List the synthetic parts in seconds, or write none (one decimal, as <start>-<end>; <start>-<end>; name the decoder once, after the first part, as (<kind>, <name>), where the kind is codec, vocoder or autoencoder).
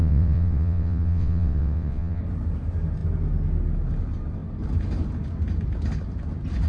0.0-2.2 (vocoder, WaveNeXt)